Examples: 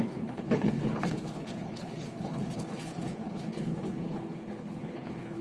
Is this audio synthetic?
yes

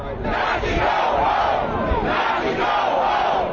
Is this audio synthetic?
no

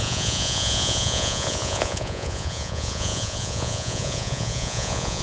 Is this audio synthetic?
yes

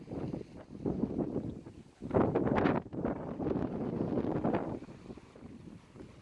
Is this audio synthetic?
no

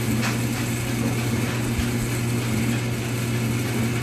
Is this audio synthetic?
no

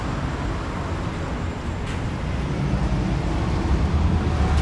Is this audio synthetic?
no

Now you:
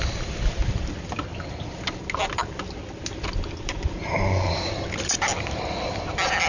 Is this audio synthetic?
no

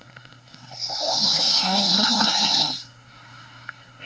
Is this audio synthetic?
yes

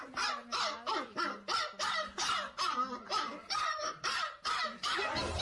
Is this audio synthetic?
no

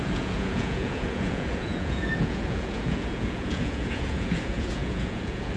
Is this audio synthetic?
yes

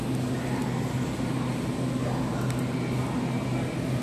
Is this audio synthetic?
no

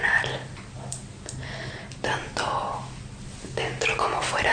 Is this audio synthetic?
no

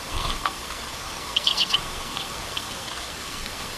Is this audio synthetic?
yes